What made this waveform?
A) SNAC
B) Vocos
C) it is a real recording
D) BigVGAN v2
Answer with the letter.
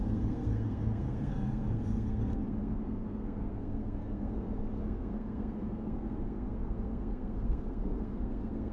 A